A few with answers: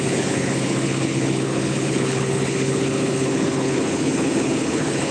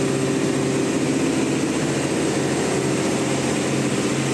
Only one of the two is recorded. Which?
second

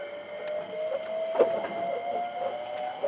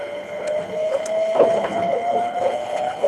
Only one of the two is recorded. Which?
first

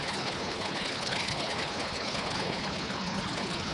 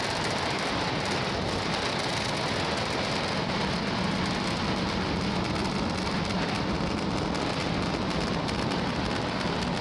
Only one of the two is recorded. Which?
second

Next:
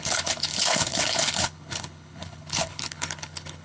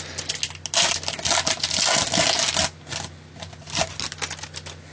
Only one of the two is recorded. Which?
second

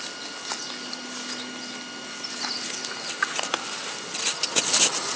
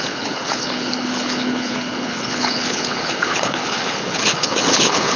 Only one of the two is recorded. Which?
first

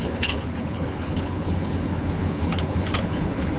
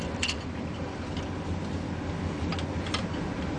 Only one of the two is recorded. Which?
second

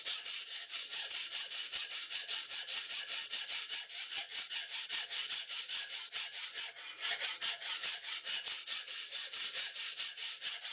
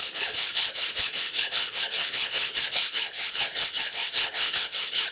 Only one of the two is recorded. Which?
first